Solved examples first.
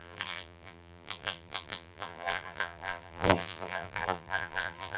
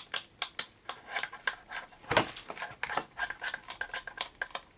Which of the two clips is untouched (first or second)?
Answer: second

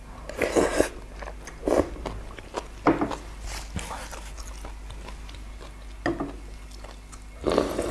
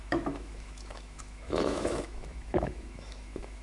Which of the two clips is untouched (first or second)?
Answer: first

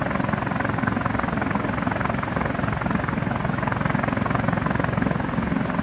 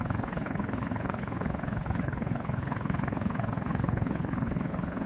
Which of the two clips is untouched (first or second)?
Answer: first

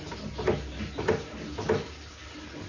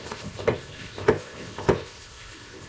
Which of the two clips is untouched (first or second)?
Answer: first